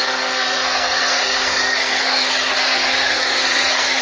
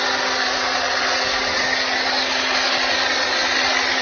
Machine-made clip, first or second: first